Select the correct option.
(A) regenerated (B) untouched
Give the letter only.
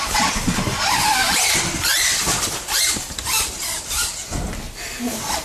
B